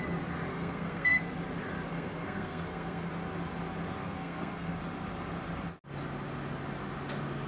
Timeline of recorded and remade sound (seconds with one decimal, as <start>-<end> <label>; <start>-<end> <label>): 0.0-0.5 recorded; 0.5-1.2 remade; 1.2-1.9 recorded; 1.9-3.1 remade; 3.1-4.0 recorded; 4.0-4.8 remade; 4.8-7.5 recorded